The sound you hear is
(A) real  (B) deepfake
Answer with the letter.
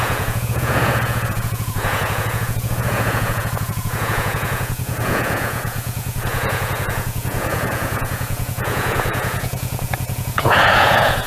B